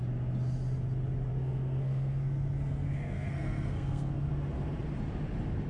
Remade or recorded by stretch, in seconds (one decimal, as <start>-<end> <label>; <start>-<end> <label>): 0.0-1.3 recorded; 1.3-4.3 remade; 4.3-5.7 recorded